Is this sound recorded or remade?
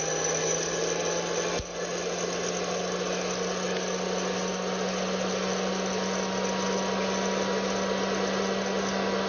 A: recorded